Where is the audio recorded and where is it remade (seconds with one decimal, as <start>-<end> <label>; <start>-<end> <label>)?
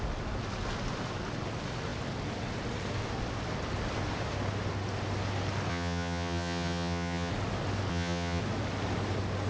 0.0-5.7 recorded; 5.7-7.3 remade; 7.3-7.9 recorded; 7.9-8.4 remade; 8.4-9.5 recorded